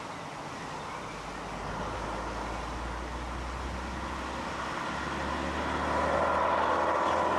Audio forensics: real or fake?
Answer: real